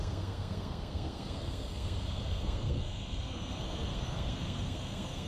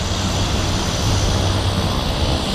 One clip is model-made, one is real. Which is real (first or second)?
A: second